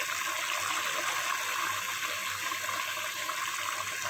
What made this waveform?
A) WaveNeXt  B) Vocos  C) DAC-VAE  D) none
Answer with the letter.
D